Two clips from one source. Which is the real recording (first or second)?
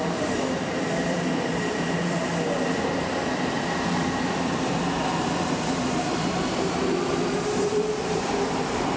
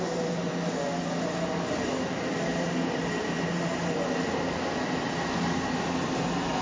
second